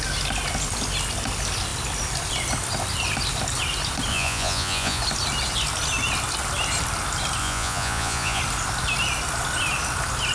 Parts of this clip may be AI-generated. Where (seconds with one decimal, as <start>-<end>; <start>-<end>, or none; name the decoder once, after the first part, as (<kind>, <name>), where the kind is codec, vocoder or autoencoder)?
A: 4.1-5.0 (vocoder, Vocos); 7.4-8.4